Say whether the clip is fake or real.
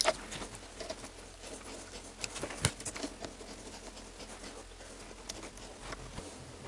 real